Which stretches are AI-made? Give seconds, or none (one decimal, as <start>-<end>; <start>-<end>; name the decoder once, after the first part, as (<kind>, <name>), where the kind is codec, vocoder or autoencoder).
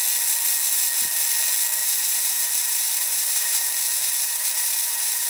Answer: 1.8-5.3 (vocoder, BigVGAN v2)